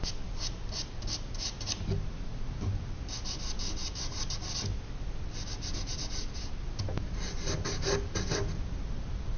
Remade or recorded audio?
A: recorded